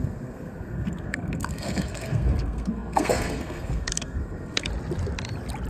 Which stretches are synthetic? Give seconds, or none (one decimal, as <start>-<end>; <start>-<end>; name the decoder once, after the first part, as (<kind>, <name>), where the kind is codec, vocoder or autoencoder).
0.0-4.7 (codec, SNAC)